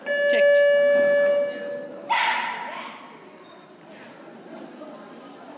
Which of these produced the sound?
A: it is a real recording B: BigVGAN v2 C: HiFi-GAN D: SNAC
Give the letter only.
A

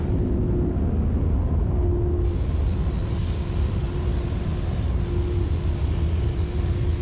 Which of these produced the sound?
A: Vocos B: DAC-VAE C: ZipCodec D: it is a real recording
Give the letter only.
D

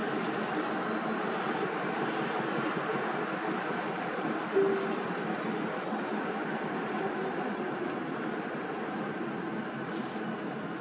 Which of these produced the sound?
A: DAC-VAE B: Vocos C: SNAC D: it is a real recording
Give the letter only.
D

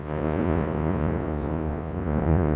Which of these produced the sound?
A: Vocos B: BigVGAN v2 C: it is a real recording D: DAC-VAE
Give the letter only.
A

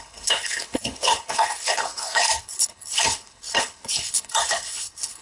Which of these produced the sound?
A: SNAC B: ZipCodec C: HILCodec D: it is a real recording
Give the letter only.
C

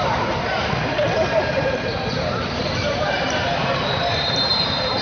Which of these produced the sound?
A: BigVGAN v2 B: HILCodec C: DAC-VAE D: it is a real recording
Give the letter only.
A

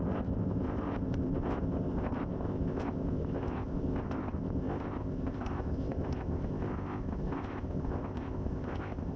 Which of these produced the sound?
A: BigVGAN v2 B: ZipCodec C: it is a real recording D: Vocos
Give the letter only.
B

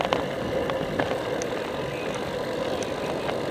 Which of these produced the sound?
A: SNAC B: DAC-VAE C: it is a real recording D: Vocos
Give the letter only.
C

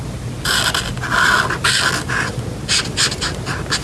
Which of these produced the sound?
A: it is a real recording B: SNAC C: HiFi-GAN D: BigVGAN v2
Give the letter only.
A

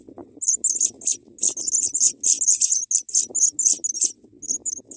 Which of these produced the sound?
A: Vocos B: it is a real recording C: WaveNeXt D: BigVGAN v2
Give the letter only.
B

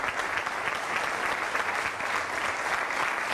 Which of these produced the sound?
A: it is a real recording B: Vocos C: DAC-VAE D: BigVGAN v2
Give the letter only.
A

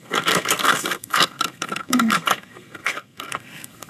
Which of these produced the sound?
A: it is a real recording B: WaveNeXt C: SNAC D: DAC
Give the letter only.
C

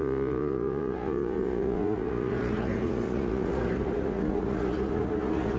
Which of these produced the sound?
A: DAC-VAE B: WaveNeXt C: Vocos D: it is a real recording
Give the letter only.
C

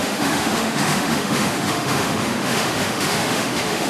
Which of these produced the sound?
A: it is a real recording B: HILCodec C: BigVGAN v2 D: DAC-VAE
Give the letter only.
D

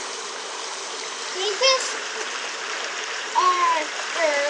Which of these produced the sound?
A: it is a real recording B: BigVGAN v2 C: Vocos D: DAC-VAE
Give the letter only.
B